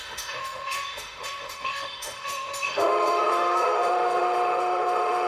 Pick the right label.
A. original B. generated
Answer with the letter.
B